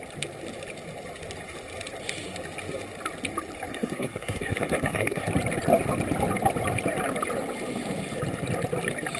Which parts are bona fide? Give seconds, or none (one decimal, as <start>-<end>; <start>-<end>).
0.0-3.7; 5.3-9.2